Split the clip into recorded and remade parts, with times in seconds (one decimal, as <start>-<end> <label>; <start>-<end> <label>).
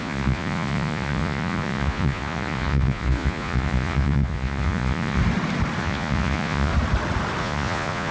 0.0-5.2 remade; 5.2-5.8 recorded; 5.8-6.7 remade; 6.7-7.4 recorded; 7.4-8.1 remade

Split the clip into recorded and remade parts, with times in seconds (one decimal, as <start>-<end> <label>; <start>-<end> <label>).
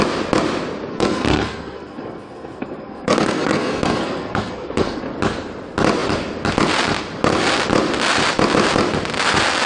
0.0-0.9 recorded; 0.9-5.0 remade; 5.0-9.7 recorded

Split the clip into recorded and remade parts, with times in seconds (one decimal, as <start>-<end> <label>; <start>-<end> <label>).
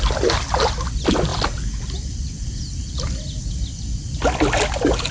0.0-5.1 recorded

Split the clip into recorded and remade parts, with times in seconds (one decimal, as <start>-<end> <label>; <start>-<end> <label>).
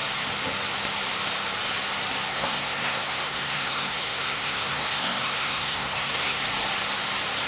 0.0-2.3 recorded; 2.3-6.4 remade; 6.4-7.5 recorded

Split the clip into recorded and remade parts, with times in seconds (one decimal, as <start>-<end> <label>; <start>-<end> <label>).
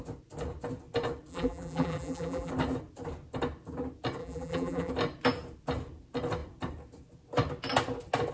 0.0-1.3 recorded; 1.3-2.5 remade; 2.5-4.2 recorded; 4.2-4.9 remade; 4.9-8.3 recorded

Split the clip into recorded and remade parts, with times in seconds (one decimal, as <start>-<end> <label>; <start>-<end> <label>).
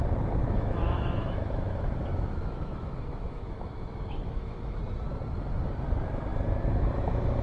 0.0-0.4 recorded; 0.4-4.8 remade; 4.8-7.4 recorded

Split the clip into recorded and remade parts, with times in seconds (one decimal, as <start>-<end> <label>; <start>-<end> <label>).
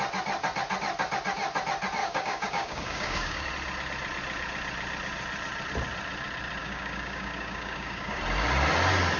0.0-2.0 recorded; 2.0-3.5 remade; 3.5-6.6 recorded; 6.6-8.2 remade; 8.2-9.2 recorded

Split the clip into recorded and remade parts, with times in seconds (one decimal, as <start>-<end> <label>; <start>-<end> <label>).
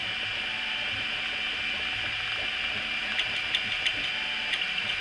0.0-5.0 recorded